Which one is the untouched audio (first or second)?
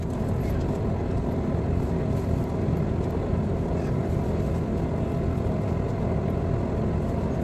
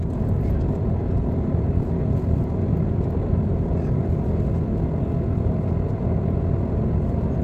first